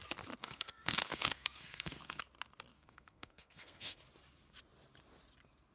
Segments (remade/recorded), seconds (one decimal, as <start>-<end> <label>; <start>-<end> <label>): 0.0-0.4 recorded; 0.4-2.2 remade; 2.2-2.7 recorded; 2.7-4.0 remade; 4.0-5.7 recorded